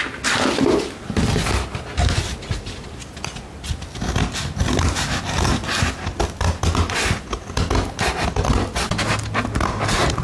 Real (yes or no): yes